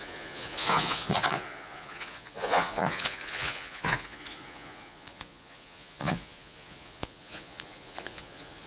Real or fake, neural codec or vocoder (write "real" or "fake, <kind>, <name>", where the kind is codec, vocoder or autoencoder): fake, vocoder, Vocos